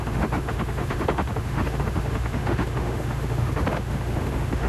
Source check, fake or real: fake